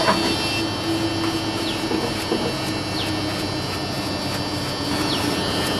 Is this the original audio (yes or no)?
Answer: yes